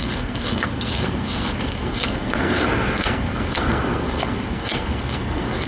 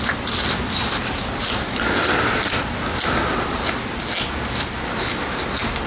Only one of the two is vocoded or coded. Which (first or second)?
first